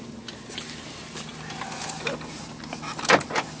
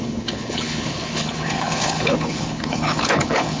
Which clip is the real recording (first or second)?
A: first